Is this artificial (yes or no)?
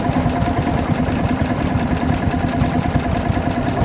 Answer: yes